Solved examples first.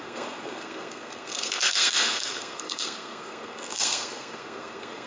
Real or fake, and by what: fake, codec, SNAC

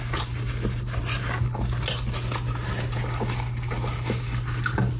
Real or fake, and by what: real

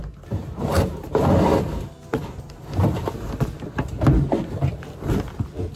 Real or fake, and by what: real